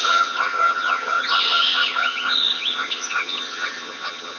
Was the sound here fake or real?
fake